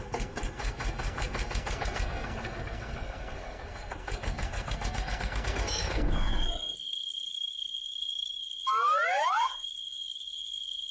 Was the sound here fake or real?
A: fake